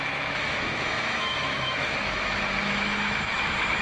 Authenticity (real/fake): fake